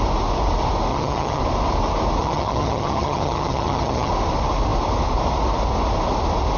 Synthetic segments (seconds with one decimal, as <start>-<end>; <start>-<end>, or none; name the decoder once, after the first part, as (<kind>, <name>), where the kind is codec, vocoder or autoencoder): 0.9-1.4 (vocoder, HiFi-GAN); 2.2-4.1